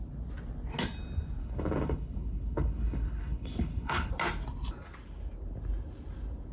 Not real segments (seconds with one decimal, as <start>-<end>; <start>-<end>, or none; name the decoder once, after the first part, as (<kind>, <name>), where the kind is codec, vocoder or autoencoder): 1.4-4.1 (codec, HILCodec)